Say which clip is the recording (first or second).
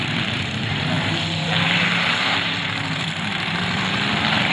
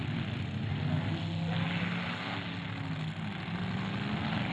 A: second